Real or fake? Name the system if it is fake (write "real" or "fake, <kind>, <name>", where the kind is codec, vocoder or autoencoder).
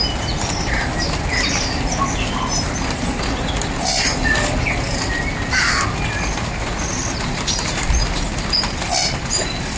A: real